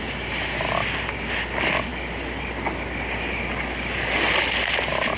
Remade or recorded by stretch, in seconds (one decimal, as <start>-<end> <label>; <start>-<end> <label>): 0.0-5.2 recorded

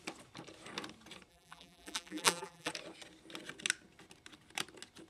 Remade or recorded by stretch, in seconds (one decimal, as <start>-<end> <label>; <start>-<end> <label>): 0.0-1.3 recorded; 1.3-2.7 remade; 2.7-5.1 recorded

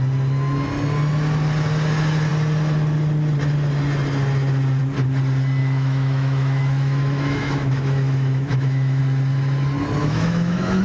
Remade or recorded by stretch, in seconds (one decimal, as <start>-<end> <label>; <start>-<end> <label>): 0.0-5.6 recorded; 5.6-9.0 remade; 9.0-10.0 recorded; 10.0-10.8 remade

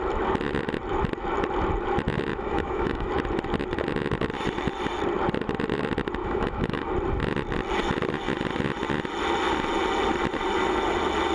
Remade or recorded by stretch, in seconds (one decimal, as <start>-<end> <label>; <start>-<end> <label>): 0.0-2.3 recorded; 2.3-3.1 remade; 3.1-6.2 recorded; 6.2-6.9 remade; 6.9-11.3 recorded